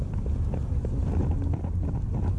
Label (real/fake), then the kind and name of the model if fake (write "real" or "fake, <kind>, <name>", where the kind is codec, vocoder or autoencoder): real